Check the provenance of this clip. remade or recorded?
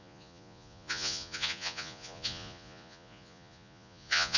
remade